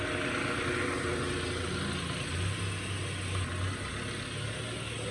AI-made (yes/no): no